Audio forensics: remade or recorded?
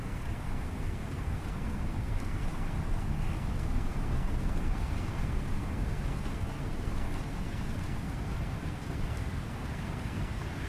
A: remade